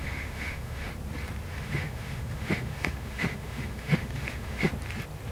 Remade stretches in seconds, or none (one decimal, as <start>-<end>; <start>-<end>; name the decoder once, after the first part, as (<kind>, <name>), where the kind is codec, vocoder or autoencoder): 0.0-0.9 (autoencoder, DAC-VAE); 1.5-4.7